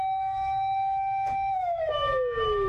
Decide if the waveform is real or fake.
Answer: fake